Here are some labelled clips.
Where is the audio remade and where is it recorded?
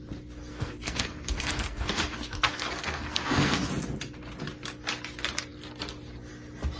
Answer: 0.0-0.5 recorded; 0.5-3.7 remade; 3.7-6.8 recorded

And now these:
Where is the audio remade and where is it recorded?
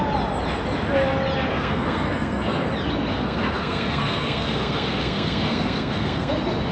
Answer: 0.0-1.5 recorded; 1.5-2.7 remade; 2.7-3.1 recorded; 3.1-6.3 remade; 6.3-6.7 recorded